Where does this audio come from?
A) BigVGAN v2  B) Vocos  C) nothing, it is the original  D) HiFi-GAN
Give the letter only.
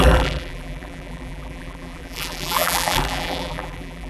A